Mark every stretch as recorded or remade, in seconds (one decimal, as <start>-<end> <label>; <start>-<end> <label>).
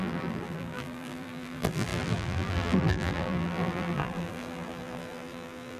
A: 0.0-5.8 remade